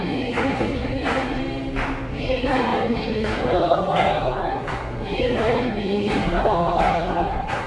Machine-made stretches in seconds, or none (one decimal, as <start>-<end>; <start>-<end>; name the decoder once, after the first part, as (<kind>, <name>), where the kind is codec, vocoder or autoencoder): 0.0-1.4 (codec, SNAC); 2.1-7.7